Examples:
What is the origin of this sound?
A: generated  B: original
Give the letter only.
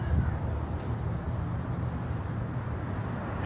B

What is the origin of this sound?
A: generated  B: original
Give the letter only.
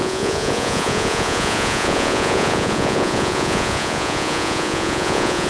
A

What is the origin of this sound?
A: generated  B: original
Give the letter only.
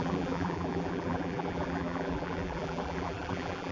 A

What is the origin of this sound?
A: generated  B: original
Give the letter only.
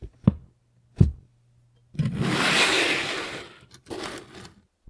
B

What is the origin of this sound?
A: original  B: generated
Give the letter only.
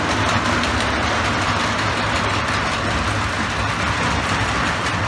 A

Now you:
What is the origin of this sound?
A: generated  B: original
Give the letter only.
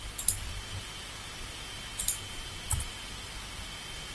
B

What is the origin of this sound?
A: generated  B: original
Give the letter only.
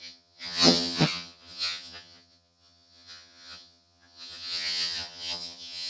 A